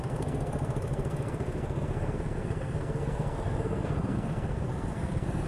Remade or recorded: remade